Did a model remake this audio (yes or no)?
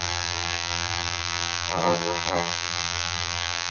yes